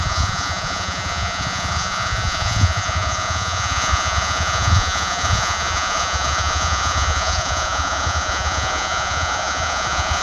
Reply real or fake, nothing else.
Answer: fake